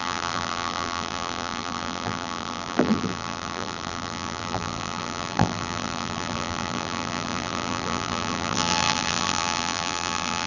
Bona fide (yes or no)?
no